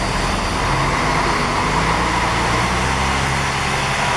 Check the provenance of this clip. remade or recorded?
recorded